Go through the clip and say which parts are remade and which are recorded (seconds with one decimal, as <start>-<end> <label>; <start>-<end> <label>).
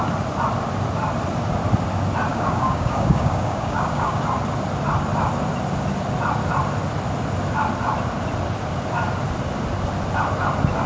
0.0-2.3 recorded; 2.3-4.2 remade; 4.2-10.9 recorded